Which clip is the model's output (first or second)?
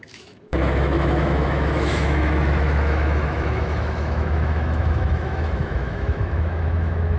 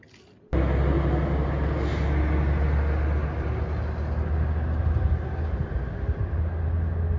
first